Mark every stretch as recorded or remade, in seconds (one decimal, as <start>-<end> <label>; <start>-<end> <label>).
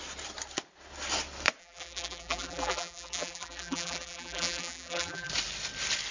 0.0-1.6 recorded; 1.6-5.3 remade; 5.3-6.1 recorded